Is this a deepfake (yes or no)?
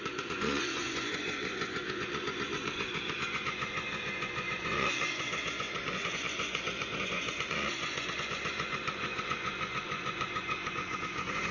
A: yes